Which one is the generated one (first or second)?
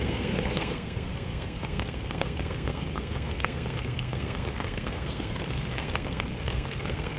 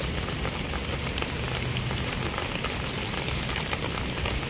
first